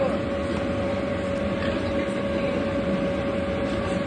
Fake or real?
real